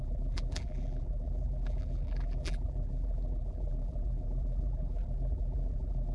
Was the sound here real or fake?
fake